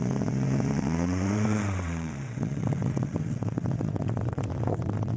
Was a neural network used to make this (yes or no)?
yes